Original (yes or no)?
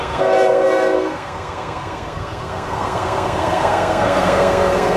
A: no